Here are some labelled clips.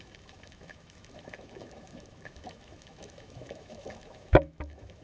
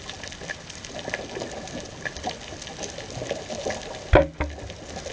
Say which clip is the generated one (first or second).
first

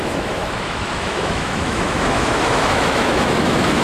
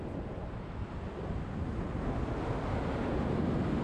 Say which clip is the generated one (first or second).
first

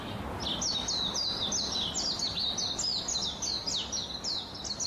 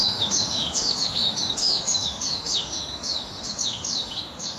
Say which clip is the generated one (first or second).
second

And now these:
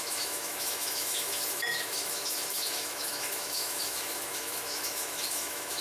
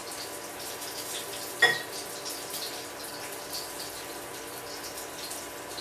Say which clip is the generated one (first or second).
first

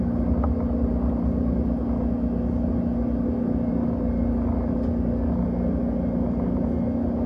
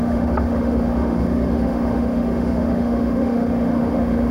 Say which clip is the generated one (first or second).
second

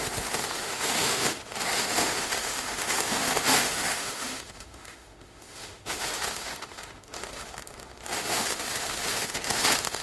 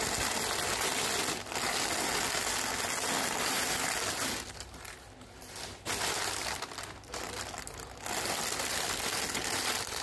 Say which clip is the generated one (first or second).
first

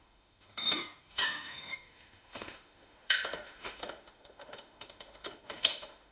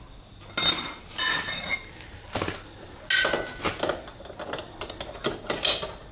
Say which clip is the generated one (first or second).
first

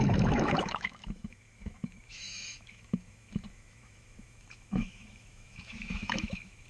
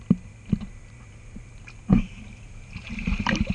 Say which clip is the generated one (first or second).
first